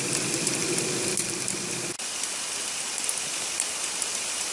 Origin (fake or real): real